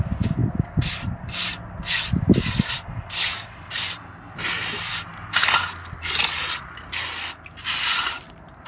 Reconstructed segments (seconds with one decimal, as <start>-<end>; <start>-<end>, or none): 3.3-3.8